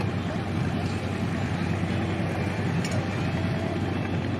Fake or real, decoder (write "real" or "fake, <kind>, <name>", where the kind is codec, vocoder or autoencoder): real